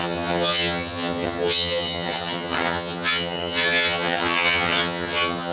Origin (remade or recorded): remade